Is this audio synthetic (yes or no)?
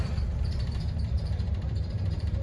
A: yes